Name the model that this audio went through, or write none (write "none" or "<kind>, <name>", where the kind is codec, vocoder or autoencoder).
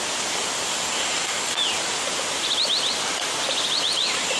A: none